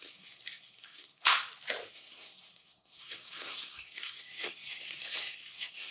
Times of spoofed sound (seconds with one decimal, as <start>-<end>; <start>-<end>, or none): 0.0-1.3; 1.9-5.9